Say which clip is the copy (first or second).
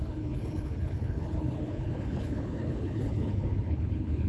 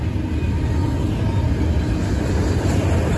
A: first